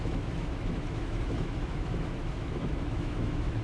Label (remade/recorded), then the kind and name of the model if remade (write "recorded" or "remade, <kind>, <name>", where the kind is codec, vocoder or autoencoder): remade, autoencoder, DAC-VAE